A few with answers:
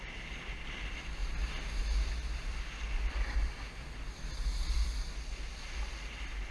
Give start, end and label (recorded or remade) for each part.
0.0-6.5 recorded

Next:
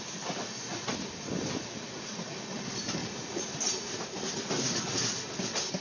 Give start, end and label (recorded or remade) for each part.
0.0-3.0 recorded; 3.0-3.5 remade; 3.5-5.8 recorded